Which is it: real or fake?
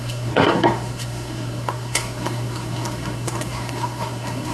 fake